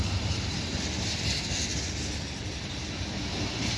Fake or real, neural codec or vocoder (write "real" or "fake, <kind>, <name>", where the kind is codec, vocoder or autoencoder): real